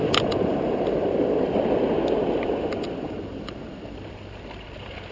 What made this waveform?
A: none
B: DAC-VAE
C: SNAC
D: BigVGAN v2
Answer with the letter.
A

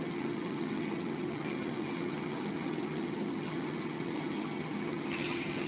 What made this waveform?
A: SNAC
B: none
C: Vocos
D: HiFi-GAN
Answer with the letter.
D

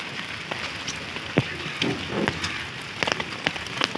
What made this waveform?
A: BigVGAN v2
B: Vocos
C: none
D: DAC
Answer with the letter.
C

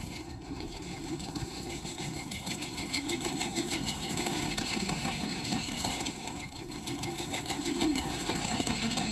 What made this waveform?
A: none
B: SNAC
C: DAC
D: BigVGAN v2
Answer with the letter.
B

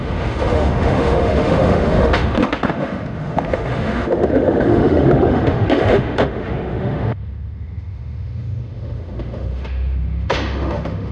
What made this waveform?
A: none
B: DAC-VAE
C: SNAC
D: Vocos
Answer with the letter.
B